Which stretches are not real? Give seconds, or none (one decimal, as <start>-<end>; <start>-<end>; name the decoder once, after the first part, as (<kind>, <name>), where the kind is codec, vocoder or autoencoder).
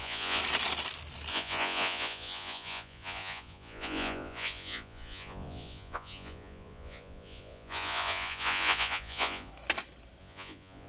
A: 0.0-0.4 (vocoder, Vocos); 1.3-9.5; 10.2-10.9